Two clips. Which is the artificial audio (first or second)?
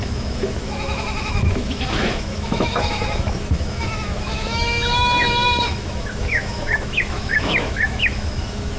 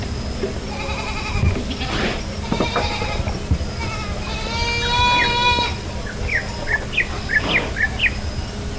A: first